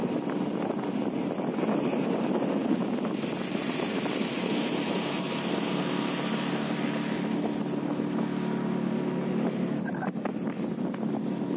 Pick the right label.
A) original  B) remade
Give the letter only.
A